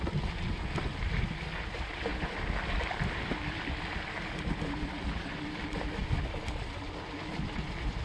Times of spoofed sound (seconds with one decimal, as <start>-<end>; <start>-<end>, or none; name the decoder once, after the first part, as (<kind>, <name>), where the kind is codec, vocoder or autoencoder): none